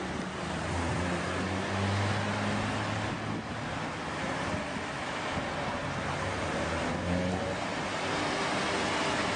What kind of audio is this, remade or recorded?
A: recorded